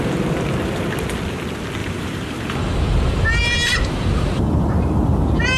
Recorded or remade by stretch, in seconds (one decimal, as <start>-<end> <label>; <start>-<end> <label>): 0.0-1.8 recorded; 1.8-5.6 remade